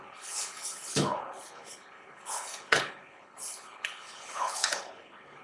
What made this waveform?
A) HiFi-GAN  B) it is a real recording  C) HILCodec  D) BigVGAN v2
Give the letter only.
C